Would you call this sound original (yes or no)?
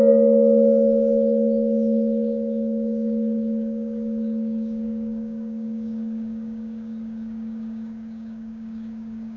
no